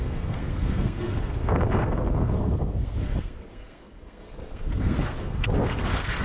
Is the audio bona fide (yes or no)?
no